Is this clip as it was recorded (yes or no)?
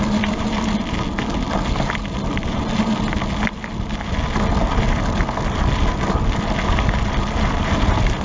yes